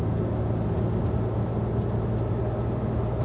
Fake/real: real